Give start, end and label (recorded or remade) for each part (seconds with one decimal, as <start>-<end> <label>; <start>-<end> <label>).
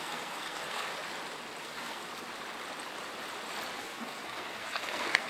0.0-0.9 remade; 0.9-1.6 recorded; 1.6-2.1 remade; 2.1-3.8 recorded; 3.8-5.3 remade